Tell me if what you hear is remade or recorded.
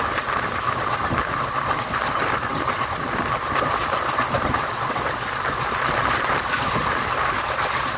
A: recorded